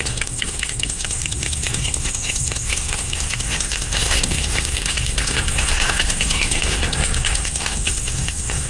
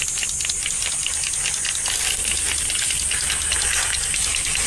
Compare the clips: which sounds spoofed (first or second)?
first